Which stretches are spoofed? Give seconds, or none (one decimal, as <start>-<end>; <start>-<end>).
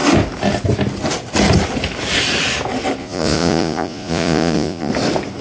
3.0-4.9